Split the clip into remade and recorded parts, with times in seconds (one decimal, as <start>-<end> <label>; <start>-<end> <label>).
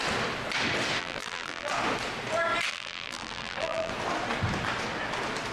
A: 0.0-1.0 recorded; 1.0-1.7 remade; 1.7-2.7 recorded; 2.7-3.9 remade; 3.9-5.5 recorded